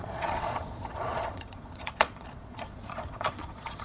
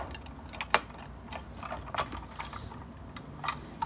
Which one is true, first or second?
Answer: second